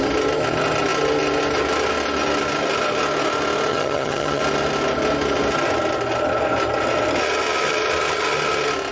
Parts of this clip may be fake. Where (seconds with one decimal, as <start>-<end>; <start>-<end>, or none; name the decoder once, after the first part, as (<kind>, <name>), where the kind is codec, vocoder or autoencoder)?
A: 3.7-4.4 (vocoder, HiFi-GAN)